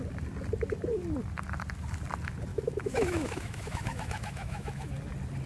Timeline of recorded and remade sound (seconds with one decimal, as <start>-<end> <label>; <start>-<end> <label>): 0.0-2.5 recorded; 2.5-4.9 remade; 4.9-5.5 recorded